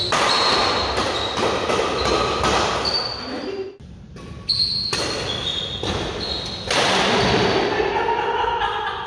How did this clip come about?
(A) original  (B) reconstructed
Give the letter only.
A